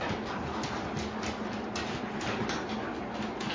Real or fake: real